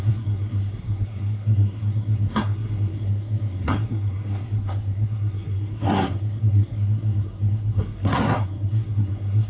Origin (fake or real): fake